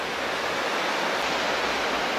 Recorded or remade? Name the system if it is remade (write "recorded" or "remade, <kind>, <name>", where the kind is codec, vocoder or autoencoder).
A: recorded